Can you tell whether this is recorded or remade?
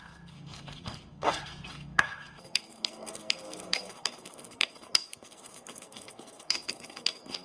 remade